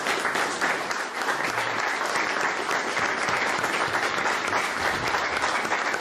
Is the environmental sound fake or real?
real